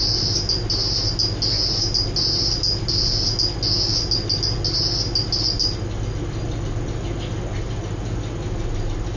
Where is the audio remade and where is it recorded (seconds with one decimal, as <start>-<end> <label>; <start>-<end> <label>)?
0.0-9.2 recorded